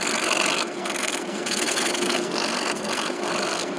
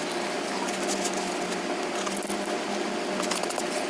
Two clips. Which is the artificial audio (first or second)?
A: first